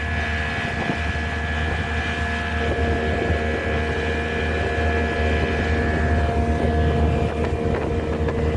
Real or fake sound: real